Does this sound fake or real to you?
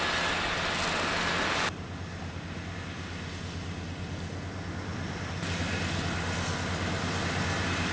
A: real